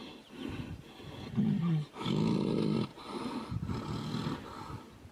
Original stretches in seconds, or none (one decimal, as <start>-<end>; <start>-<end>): 0.8-2.9; 3.5-5.1